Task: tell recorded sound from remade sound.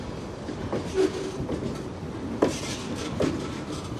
recorded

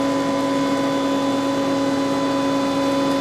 recorded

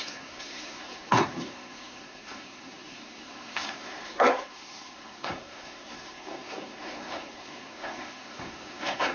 remade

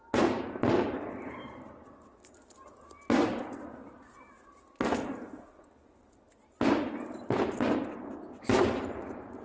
recorded